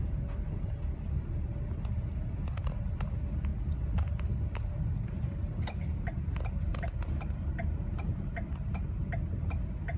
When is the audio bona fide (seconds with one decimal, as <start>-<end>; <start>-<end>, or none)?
0.0-10.0